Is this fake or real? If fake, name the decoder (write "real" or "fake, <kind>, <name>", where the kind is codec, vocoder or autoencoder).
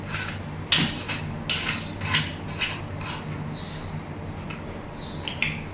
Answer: real